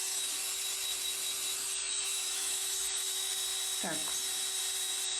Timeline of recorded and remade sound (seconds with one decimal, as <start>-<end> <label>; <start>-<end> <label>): 0.0-1.8 recorded; 1.8-3.3 remade; 3.3-5.2 recorded